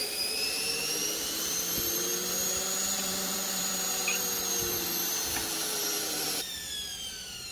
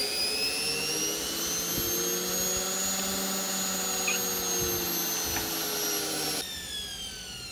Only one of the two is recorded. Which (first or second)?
second